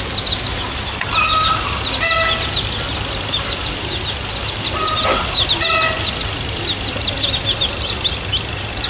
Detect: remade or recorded recorded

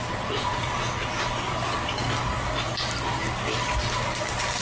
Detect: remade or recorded recorded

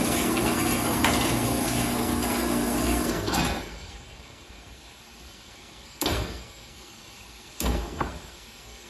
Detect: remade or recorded remade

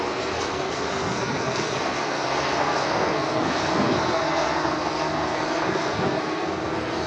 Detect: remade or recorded remade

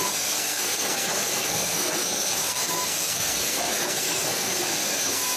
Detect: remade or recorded remade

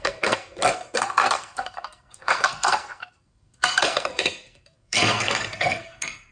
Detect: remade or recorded remade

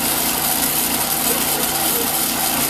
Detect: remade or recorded recorded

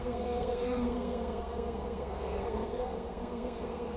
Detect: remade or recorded remade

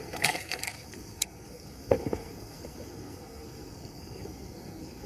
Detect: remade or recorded remade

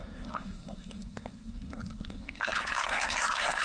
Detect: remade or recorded remade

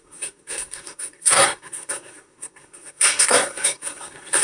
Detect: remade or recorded remade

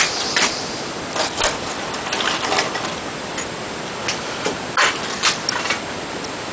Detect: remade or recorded recorded